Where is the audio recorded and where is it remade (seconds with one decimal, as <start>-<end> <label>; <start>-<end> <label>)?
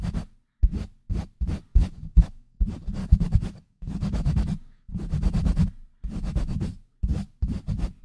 0.0-1.7 recorded; 1.7-2.6 remade; 2.6-3.0 recorded; 3.0-4.9 remade; 4.9-8.0 recorded